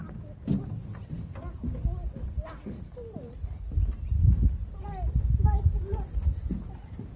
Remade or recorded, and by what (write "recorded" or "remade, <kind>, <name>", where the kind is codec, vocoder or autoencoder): recorded